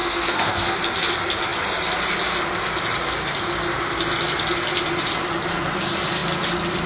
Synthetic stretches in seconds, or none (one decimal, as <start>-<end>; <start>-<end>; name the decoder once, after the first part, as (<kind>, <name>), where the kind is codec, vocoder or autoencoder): 0.0-0.8 (codec, SNAC)